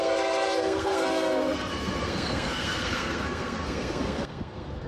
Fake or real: fake